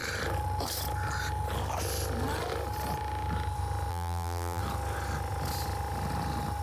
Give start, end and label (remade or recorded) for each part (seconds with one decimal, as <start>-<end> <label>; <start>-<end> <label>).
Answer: 0.0-3.9 recorded; 3.9-4.6 remade; 4.6-6.6 recorded